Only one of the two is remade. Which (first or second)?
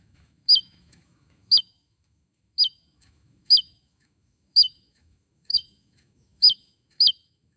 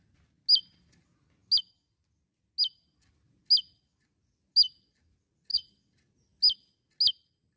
first